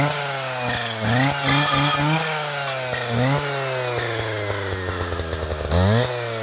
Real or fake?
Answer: real